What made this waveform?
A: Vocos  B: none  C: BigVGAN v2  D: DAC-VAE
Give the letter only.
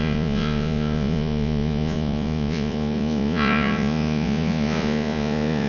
A